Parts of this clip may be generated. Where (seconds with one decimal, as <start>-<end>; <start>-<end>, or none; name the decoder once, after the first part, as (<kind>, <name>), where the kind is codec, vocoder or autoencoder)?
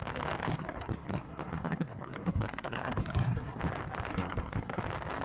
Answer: 0.5-3.6 (codec, SNAC); 4.1-4.8